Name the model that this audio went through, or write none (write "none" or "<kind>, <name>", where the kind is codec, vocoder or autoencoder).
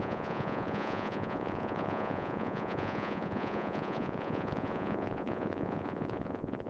vocoder, Vocos